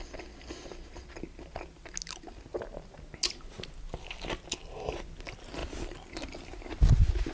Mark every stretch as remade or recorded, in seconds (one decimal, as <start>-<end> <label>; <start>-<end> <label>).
0.0-7.3 recorded